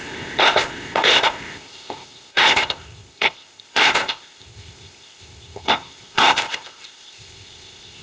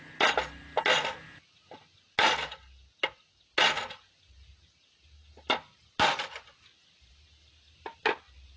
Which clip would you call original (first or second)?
second